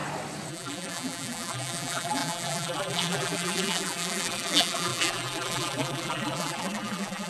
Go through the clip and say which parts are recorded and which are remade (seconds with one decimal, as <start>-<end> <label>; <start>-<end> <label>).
0.0-0.5 recorded; 0.5-7.3 remade